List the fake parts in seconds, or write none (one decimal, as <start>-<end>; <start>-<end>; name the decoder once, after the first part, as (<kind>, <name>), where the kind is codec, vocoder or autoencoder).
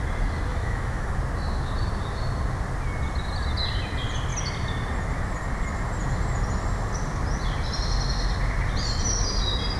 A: 0.5-1.1 (autoencoder, DAC-VAE)